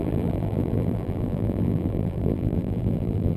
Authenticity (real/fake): fake